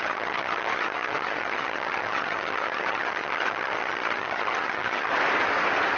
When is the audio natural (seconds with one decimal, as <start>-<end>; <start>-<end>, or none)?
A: 5.1-6.0